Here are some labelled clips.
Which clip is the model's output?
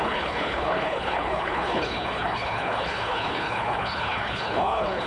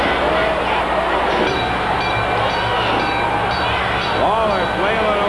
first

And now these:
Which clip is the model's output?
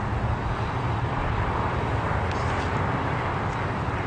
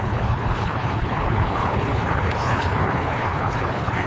second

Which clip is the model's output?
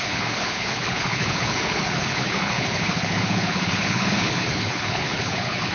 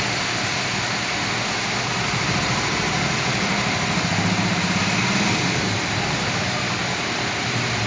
first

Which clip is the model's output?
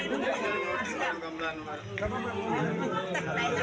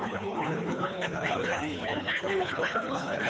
second